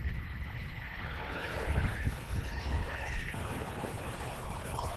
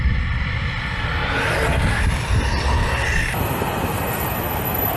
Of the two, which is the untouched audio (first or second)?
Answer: second